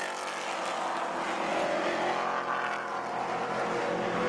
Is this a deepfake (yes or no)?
no